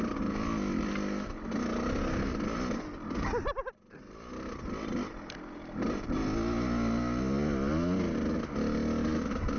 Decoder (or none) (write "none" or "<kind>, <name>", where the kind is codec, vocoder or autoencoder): none